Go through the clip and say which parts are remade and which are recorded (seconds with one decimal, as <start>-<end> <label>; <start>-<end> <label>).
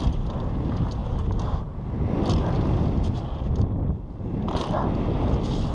0.0-5.7 recorded